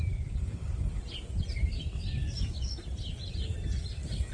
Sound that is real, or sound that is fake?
real